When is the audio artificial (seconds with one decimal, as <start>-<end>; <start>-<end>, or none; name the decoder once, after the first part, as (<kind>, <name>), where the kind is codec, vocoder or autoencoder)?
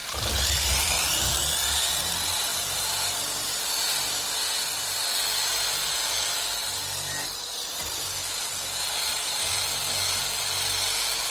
0.0-1.4 (vocoder, BigVGAN v2); 2.5-6.0; 6.6-7.7; 8.2-9.9